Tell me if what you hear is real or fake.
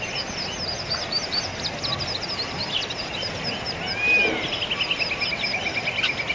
real